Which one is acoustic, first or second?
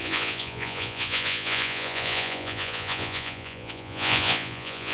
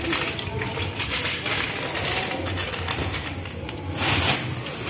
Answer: second